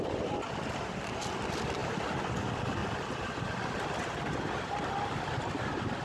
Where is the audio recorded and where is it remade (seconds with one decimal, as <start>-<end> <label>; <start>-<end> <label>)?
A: 0.0-2.8 recorded; 2.8-5.6 remade; 5.6-6.0 recorded

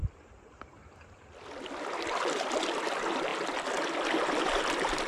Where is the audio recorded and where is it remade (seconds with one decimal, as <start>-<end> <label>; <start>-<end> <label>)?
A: 0.0-5.1 recorded